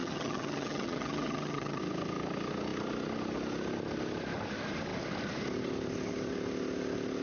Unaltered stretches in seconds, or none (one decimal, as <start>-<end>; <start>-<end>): 1.8-7.2